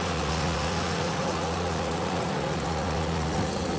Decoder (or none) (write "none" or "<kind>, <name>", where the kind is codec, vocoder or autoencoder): vocoder, Vocos